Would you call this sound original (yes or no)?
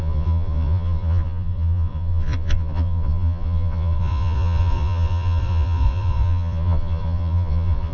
no